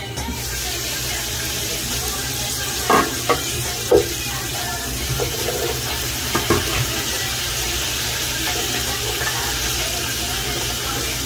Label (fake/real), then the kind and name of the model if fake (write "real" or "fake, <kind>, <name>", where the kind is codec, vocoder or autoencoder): fake, vocoder, BigVGAN v2